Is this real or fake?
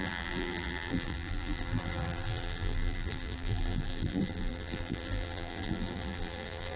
fake